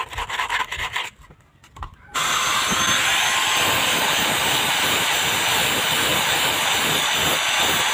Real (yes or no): yes